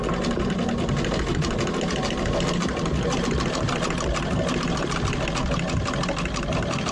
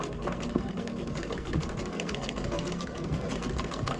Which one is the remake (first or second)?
second